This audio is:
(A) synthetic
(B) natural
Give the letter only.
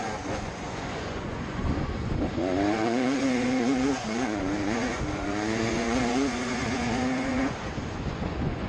A